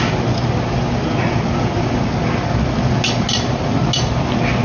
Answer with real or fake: real